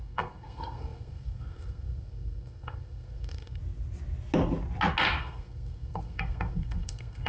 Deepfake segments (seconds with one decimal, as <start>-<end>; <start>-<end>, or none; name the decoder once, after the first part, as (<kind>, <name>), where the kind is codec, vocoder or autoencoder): 0.0-3.6 (codec, SNAC); 5.2-7.3